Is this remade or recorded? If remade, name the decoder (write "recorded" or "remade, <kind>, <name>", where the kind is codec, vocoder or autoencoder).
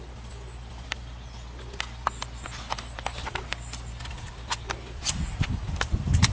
recorded